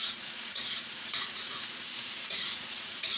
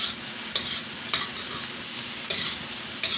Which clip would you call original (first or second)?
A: second